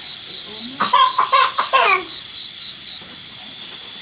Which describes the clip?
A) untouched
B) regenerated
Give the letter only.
A